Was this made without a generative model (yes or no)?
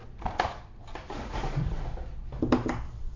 yes